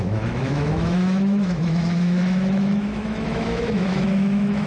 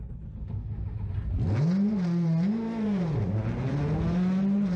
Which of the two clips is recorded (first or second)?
second